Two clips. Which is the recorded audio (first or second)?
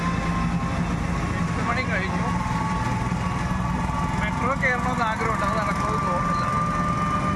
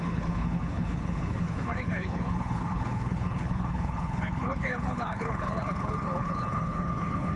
first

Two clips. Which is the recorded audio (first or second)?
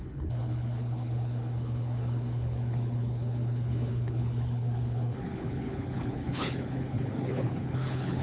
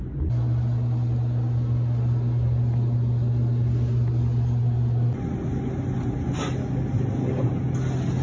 second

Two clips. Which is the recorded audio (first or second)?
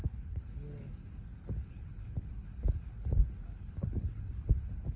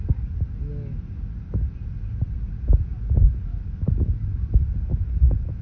second